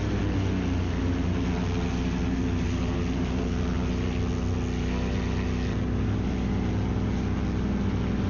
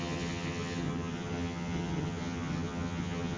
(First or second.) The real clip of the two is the first